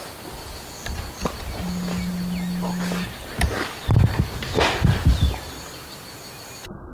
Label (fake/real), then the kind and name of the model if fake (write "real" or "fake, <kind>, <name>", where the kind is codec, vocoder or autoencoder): real